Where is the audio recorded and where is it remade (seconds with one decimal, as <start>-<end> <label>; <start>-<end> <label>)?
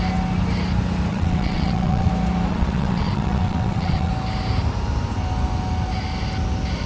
0.0-1.1 recorded; 1.1-2.1 remade; 2.1-2.5 recorded; 2.5-4.1 remade; 4.1-6.9 recorded